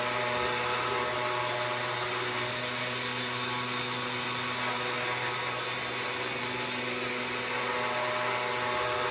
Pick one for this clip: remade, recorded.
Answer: recorded